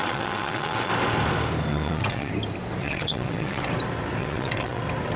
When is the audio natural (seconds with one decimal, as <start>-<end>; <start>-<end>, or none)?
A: 0.9-1.7; 2.3-2.8; 3.6-4.2; 4.8-5.2